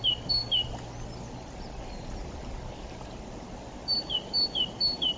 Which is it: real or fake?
real